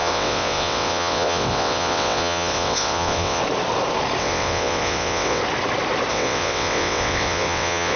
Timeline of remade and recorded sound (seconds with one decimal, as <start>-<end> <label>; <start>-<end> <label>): 0.0-3.4 remade; 3.4-4.2 recorded; 4.2-5.4 remade; 5.4-6.1 recorded; 6.1-8.0 remade